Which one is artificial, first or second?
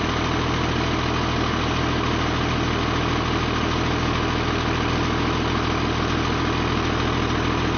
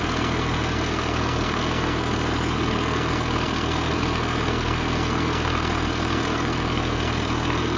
second